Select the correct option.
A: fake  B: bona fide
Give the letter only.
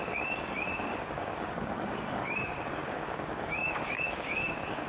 A